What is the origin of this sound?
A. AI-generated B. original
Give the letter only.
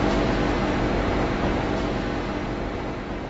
B